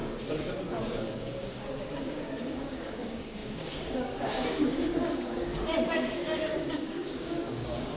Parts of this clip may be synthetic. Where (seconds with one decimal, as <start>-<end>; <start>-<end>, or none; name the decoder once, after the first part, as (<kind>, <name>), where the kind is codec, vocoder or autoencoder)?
0.8-8.0 (codec, DAC)